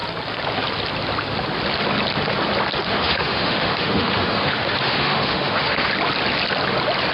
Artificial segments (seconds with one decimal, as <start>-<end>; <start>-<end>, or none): 2.9-5.9